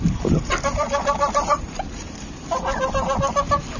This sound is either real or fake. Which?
real